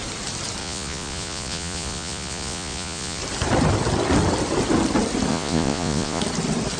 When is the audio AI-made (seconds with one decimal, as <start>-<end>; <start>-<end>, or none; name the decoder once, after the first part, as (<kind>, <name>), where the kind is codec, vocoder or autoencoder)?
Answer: 0.6-3.2 (vocoder, Vocos); 5.3-6.2